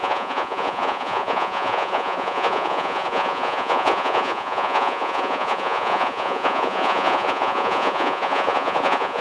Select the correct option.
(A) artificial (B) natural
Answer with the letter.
A